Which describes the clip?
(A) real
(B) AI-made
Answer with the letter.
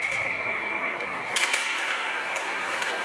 B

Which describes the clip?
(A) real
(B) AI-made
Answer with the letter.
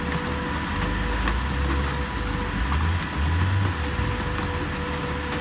A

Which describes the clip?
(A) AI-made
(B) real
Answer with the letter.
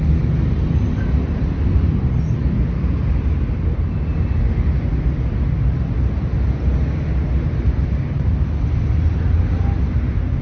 B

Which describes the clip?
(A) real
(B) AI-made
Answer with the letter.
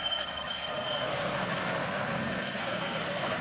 B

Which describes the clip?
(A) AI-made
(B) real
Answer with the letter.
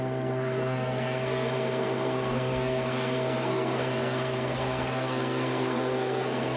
A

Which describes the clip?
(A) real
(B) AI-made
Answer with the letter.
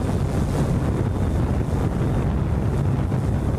A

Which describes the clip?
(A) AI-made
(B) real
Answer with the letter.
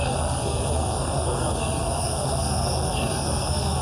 A